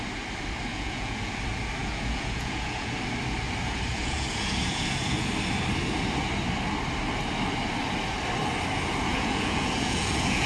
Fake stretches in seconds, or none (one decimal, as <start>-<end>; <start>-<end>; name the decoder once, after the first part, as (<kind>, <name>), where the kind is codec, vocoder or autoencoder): 0.7-1.3 (vocoder, Vocos); 1.8-2.9; 3.9-5.3; 9.1-10.5